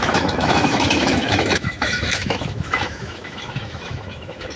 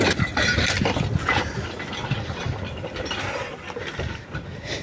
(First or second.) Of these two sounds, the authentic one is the second